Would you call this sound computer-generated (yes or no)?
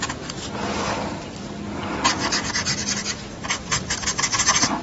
no